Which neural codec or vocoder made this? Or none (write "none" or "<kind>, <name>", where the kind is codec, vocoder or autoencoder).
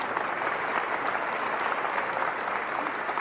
none